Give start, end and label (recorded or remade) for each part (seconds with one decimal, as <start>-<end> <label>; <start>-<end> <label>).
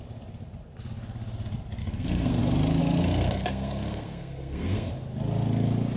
0.0-1.8 recorded; 1.8-2.4 remade; 2.4-2.8 recorded; 2.8-4.9 remade; 4.9-6.0 recorded